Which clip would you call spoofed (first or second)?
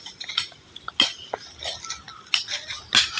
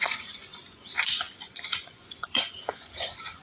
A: second